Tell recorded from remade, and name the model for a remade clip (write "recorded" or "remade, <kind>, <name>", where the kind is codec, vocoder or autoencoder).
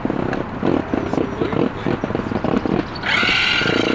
recorded